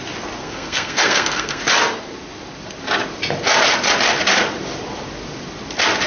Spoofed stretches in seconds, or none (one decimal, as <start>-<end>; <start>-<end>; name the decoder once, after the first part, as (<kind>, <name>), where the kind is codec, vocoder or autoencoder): 0.4-1.6 (codec, SNAC)